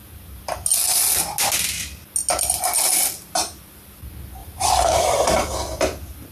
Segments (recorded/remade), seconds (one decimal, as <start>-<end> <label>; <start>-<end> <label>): 0.0-4.4 recorded; 4.4-5.5 remade; 5.5-6.3 recorded